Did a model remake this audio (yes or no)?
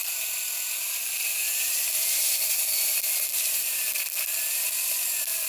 no